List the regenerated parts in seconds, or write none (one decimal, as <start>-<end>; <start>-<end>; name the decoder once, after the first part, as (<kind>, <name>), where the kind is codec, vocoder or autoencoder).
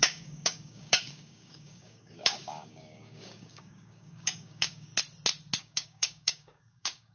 0.0-4.9 (codec, DAC); 5.6-7.1